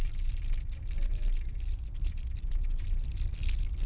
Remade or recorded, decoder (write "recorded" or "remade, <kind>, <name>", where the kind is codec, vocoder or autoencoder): remade, vocoder, BigVGAN v2